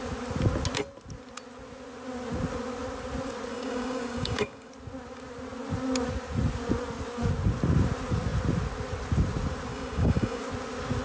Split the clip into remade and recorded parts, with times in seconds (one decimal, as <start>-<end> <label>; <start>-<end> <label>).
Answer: 0.0-3.5 recorded; 3.5-4.7 remade; 4.7-9.7 recorded; 9.7-10.4 remade; 10.4-11.0 recorded